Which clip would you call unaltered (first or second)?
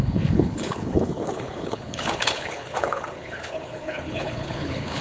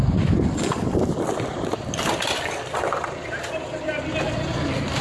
second